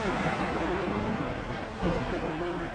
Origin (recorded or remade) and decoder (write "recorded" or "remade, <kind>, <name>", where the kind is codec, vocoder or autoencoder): remade, codec, SNAC